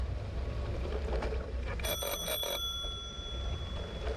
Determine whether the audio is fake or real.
fake